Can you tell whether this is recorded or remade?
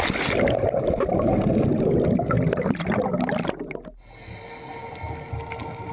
recorded